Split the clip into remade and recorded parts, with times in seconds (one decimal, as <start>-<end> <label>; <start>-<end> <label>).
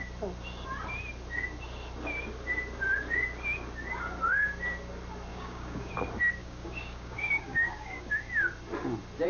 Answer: 0.0-5.3 recorded; 5.3-5.9 remade; 5.9-6.4 recorded; 6.4-8.1 remade; 8.1-9.3 recorded